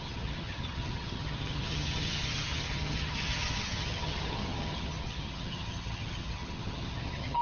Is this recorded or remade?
remade